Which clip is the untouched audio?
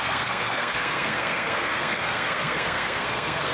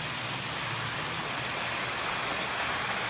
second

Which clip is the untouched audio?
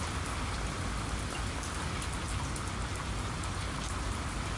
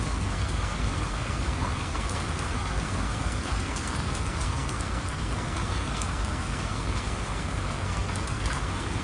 first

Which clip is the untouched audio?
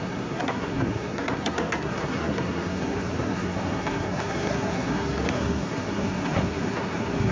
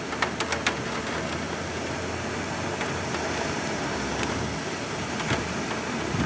second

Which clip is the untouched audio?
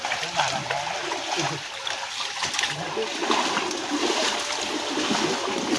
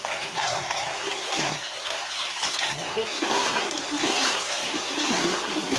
first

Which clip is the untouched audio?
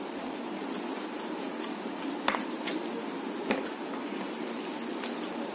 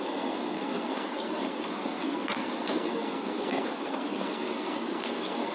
first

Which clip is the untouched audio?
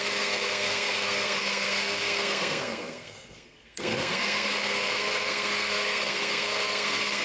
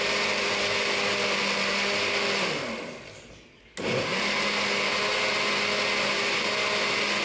second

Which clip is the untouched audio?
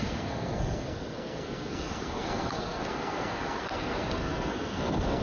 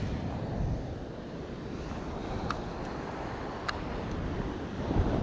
second